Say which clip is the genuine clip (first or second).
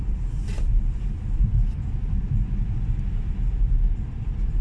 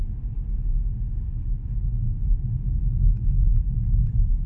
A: second